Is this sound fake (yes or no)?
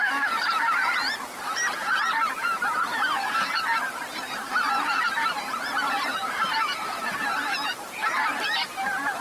yes